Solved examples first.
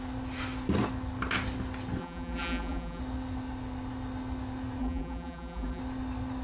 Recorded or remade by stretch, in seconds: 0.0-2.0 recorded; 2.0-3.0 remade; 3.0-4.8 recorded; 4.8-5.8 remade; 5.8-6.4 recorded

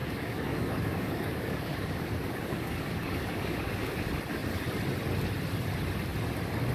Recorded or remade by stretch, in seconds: 0.0-4.0 remade; 4.0-6.7 recorded

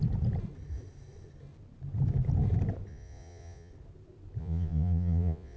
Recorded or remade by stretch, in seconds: 0.0-2.9 recorded; 2.9-3.7 remade; 3.7-4.4 recorded; 4.4-5.6 remade

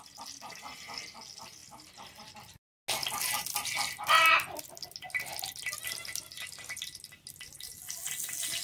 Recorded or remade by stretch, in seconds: 0.0-8.6 recorded

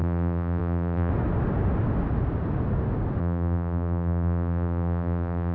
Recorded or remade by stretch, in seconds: 0.0-1.1 remade; 1.1-3.2 recorded; 3.2-5.5 remade

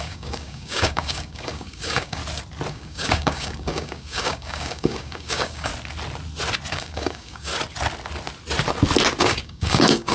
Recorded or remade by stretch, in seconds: 0.0-2.2 remade; 2.2-2.7 recorded; 2.7-5.7 remade; 5.7-6.7 recorded; 6.7-7.5 remade; 7.5-9.2 recorded; 9.2-10.1 remade